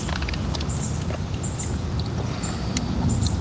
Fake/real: real